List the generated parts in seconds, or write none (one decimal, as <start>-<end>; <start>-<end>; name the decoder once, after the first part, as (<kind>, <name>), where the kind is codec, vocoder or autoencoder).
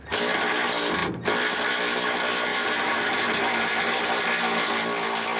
2.5-3.8 (vocoder, BigVGAN v2)